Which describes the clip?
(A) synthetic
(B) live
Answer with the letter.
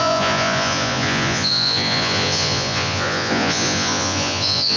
A